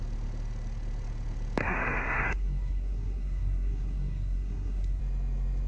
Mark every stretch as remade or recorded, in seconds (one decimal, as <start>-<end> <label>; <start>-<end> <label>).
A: 0.0-1.6 recorded; 1.6-5.0 remade; 5.0-5.7 recorded